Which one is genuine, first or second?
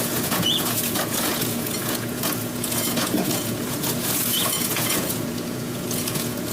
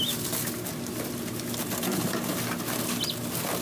second